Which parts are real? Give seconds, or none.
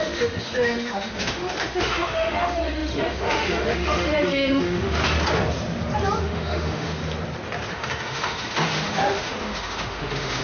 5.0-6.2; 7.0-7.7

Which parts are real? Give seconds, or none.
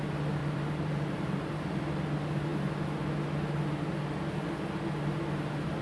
0.0-0.4; 1.8-5.8